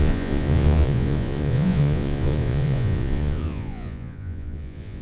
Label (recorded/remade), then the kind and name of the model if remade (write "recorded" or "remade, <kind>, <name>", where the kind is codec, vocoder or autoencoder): remade, vocoder, Vocos